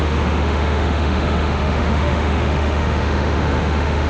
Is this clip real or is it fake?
fake